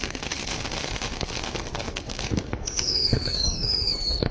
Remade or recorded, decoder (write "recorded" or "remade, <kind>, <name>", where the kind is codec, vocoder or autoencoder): remade, codec, SNAC